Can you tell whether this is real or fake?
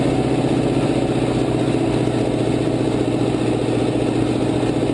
real